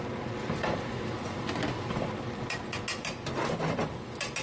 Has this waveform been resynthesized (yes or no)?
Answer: no